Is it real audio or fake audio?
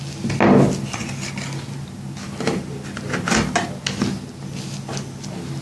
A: real